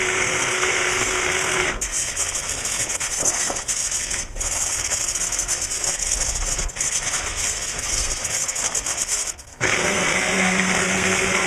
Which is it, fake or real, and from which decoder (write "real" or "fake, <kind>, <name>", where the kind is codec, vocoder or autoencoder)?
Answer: fake, codec, SNAC